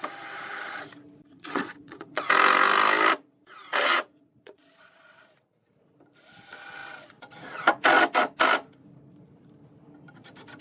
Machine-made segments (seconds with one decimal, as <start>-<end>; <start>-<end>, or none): 1.3-2.3; 3.9-5.2